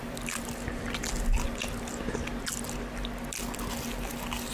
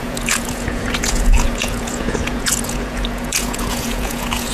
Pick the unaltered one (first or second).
first